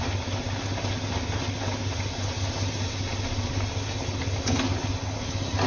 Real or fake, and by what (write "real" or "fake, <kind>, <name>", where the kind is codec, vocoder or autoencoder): real